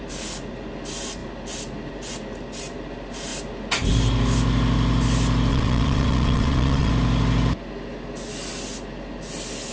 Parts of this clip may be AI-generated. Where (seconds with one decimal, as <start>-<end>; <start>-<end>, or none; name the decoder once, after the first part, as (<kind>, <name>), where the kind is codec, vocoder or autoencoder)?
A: 5.5-6.9 (vocoder, WaveNeXt)